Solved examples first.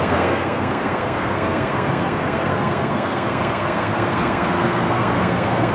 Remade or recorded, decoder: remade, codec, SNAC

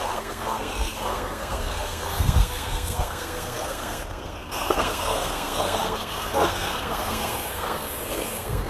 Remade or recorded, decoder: remade, codec, SNAC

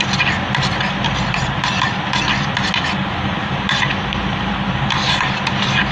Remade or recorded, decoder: recorded